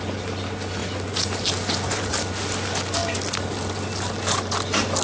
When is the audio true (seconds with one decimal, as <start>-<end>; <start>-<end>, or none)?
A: 0.0-5.0